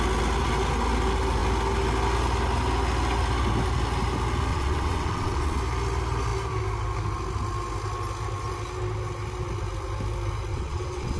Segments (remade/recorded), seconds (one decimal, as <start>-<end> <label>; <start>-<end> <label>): 0.0-4.5 recorded; 4.5-5.6 remade; 5.6-10.5 recorded; 10.5-11.2 remade